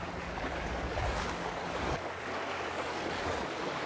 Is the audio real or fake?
fake